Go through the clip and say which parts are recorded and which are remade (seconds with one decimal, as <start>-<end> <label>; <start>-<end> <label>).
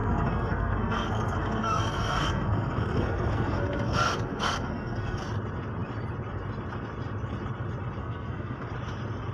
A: 0.0-5.2 remade; 5.2-8.0 recorded; 8.0-8.6 remade; 8.6-9.3 recorded